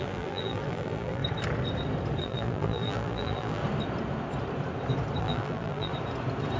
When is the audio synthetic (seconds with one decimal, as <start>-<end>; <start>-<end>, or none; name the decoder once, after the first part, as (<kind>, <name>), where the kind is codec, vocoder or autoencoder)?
0.0-1.2 (vocoder, BigVGAN v2); 2.2-3.6; 5.2-5.9